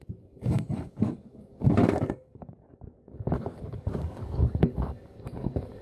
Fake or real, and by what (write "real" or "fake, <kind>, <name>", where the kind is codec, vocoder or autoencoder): fake, codec, DAC